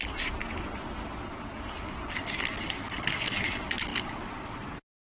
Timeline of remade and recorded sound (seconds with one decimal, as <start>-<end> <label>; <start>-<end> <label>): 0.0-5.0 recorded